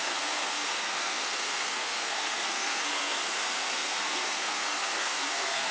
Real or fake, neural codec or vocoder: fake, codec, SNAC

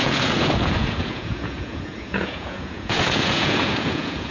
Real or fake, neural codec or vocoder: fake, vocoder, Vocos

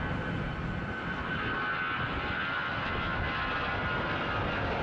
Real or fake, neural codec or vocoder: real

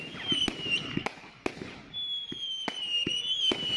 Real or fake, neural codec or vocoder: real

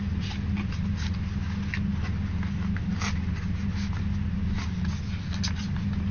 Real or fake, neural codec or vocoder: real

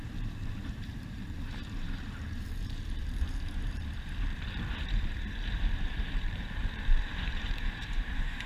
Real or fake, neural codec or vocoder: fake, vocoder, BigVGAN v2